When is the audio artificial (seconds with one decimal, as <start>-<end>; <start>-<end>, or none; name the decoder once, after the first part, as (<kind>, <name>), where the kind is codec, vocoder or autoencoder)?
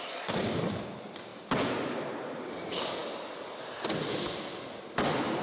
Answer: none